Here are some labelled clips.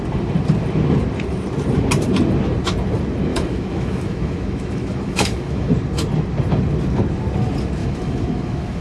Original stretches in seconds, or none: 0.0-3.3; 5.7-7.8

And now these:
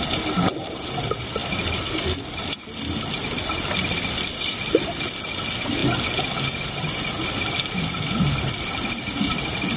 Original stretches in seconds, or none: 0.0-9.8

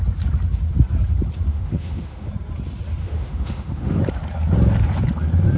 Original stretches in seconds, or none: 0.0-1.5; 2.3-3.0; 4.0-5.6

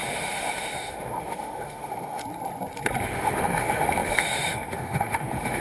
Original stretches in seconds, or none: 2.2-3.0

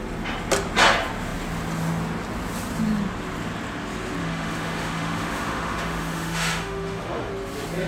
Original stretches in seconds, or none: 0.0-4.2; 7.3-7.9

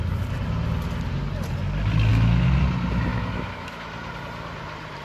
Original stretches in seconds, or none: 0.0-2.1; 2.6-3.1; 3.9-5.0

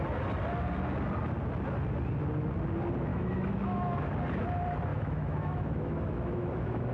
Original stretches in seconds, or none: 0.0-3.1; 4.1-4.9